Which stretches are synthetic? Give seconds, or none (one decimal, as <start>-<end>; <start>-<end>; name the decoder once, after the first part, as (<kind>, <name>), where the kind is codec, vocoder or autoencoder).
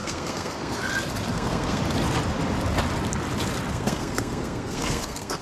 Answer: 0.0-0.8 (codec, SNAC); 1.3-1.8; 3.7-5.4